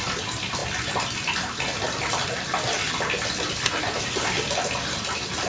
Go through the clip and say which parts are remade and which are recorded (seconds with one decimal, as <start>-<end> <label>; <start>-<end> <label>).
0.0-5.5 recorded